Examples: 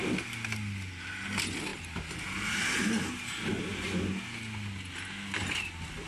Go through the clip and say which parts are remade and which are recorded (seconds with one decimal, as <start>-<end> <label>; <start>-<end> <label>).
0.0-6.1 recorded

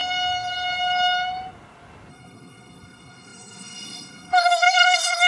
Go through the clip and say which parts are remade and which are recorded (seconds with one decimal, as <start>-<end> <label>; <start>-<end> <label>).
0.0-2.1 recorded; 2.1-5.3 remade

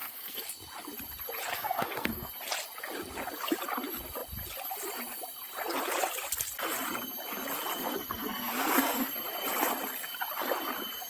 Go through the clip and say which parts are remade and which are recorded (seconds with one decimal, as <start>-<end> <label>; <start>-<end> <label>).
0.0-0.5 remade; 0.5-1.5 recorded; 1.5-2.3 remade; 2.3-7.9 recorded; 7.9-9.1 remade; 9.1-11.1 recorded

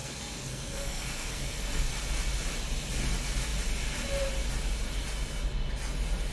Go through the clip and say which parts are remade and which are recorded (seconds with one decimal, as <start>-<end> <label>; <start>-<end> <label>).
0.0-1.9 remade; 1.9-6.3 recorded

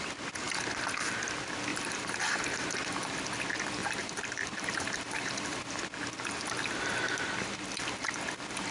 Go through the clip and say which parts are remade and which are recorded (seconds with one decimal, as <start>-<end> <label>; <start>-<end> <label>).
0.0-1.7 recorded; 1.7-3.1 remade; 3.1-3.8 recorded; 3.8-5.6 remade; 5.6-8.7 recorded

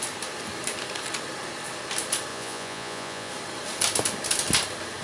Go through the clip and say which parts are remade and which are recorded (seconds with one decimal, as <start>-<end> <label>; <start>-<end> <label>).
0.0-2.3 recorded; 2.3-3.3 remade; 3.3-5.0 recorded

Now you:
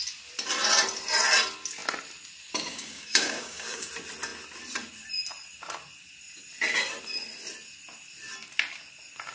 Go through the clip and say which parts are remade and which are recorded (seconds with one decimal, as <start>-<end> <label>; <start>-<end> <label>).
0.0-2.7 recorded; 2.7-3.9 remade; 3.9-9.3 recorded

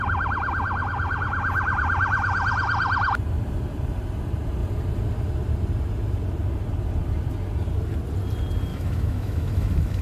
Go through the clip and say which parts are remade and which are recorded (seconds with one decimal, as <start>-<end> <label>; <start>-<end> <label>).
0.0-8.7 recorded; 8.7-10.0 remade